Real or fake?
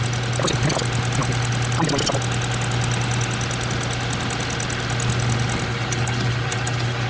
real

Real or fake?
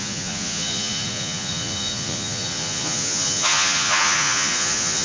fake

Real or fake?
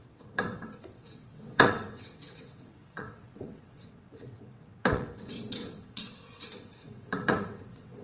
fake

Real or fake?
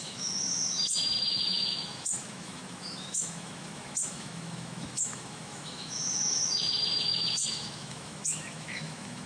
fake